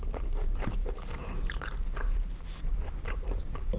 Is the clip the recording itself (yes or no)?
no